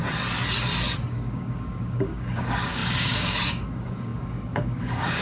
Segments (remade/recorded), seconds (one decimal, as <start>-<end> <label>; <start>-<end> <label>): 0.0-1.1 recorded; 1.1-5.2 remade